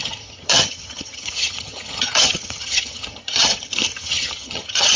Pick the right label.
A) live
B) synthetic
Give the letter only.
B